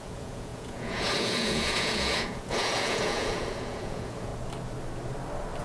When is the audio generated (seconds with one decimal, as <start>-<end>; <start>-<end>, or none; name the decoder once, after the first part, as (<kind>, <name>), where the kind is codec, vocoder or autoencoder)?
0.0-4.3 (vocoder, Vocos)